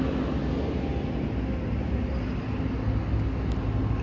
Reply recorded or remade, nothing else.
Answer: recorded